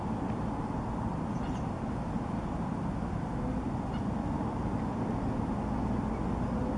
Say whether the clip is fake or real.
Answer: real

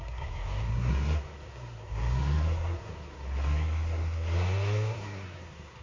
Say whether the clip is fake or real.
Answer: fake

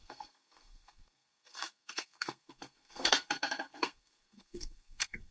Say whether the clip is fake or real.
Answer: fake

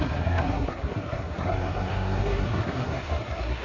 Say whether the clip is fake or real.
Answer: fake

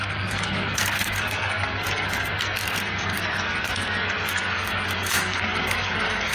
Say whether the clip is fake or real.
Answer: fake